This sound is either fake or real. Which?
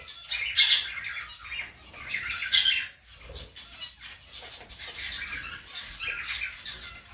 real